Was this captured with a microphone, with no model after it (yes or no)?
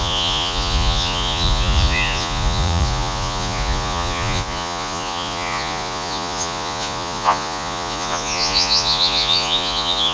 no